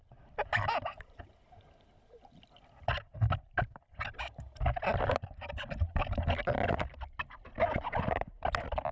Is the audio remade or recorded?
recorded